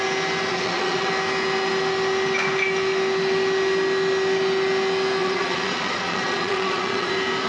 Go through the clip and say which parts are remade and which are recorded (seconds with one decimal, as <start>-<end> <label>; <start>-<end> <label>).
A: 0.0-0.5 recorded; 0.5-1.1 remade; 1.1-5.2 recorded; 5.2-7.1 remade; 7.1-7.5 recorded